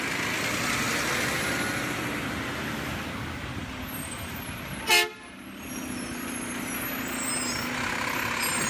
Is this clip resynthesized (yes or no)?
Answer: no